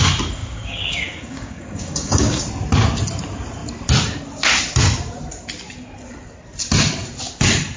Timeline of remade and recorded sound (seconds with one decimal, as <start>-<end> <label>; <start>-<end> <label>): 0.0-0.4 recorded; 0.4-2.4 remade; 2.4-7.8 recorded